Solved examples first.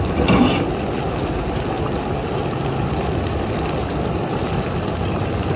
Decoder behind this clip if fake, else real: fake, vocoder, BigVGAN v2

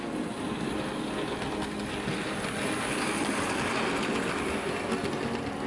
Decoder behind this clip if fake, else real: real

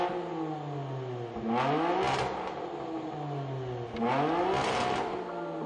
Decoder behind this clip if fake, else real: real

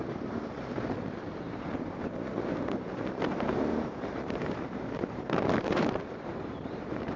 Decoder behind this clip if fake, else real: fake, vocoder, BigVGAN v2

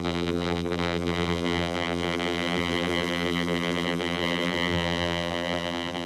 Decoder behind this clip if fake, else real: fake, vocoder, BigVGAN v2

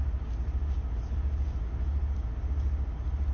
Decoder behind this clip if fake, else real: real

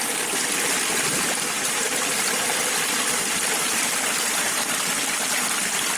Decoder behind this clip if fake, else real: real